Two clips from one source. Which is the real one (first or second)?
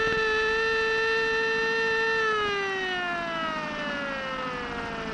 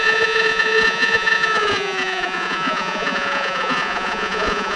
first